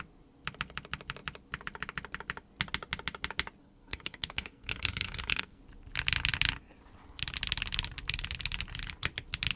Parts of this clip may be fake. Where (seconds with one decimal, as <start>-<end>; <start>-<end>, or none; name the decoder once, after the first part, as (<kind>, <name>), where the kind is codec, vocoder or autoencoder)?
3.6-5.6 (codec, SNAC)